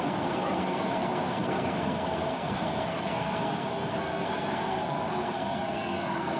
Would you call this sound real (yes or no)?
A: no